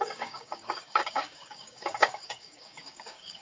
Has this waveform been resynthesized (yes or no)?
yes